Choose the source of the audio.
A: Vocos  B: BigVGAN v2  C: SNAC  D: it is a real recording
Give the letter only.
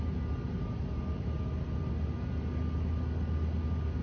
D